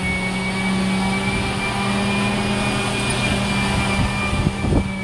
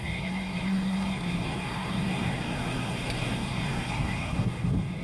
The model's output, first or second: second